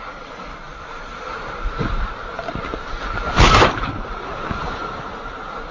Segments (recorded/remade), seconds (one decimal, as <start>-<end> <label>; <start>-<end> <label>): 0.0-5.7 recorded